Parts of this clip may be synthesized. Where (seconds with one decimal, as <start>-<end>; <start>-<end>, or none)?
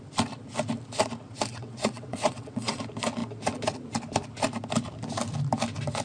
1.5-2.8